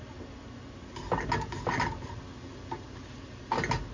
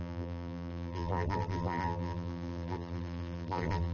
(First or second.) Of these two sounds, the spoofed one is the second